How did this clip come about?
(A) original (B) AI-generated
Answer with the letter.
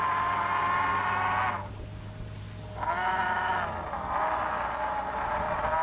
A